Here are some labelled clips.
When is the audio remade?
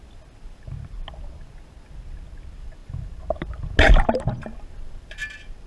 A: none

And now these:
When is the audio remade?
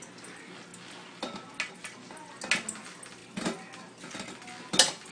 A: none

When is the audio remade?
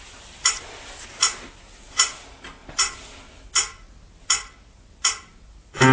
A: none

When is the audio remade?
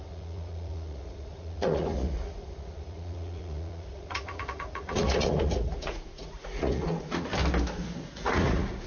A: 0.0-7.3 (vocoder, Vocos); 8.0-8.9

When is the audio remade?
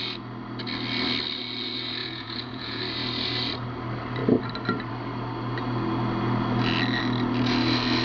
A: 2.0-2.8 (vocoder, Vocos)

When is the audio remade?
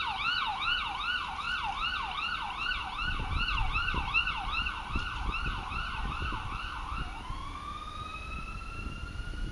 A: none